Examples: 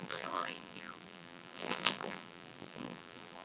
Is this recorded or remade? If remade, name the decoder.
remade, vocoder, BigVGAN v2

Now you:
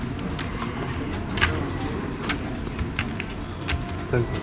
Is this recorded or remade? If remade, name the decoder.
recorded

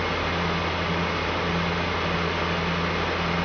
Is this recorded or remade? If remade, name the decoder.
recorded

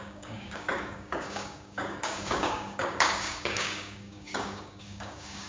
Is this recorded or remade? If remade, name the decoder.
remade, codec, DAC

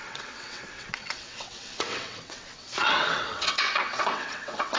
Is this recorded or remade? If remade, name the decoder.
remade, vocoder, WaveNeXt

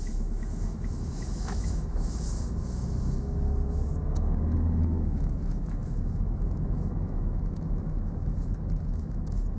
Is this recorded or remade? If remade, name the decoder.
remade, autoencoder, DAC-VAE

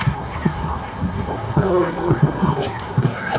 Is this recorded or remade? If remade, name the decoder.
remade, codec, SNAC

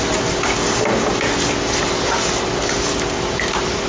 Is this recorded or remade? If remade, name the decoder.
recorded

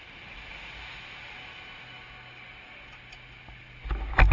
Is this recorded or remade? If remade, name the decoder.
recorded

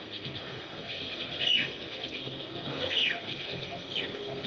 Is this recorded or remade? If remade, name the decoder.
remade, codec, SNAC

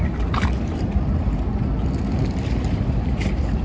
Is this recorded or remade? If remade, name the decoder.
recorded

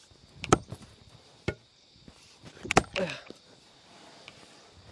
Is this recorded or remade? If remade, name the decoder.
recorded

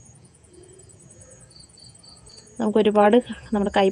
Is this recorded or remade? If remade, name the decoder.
remade, vocoder, Vocos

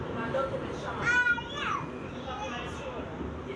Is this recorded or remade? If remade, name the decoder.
recorded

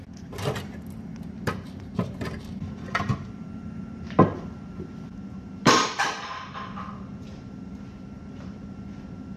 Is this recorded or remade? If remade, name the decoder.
remade, vocoder, BigVGAN v2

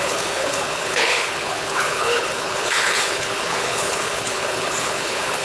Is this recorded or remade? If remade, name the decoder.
remade, codec, HILCodec